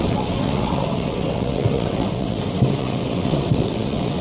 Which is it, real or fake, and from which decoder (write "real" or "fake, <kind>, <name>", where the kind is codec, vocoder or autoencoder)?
fake, vocoder, WaveNeXt